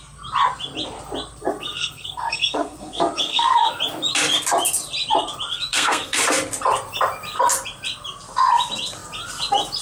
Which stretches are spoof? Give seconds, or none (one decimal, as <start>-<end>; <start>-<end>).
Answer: 1.4-3.7; 5.5-6.2